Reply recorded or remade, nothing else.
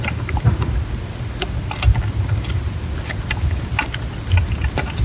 recorded